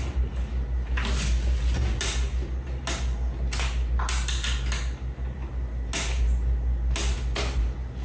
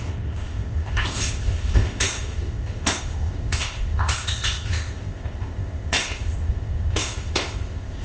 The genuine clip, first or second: first